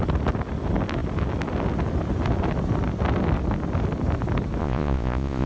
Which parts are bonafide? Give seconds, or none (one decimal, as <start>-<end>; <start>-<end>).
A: 0.0-4.6